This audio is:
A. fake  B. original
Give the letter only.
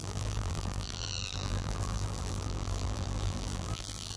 A